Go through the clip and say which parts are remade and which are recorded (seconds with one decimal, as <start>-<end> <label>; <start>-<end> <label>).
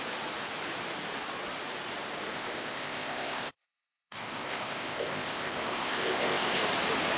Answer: 0.0-2.3 recorded; 2.3-6.6 remade; 6.6-7.2 recorded